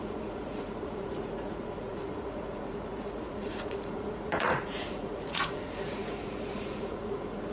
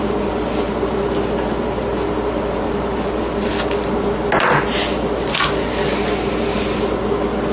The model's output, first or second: first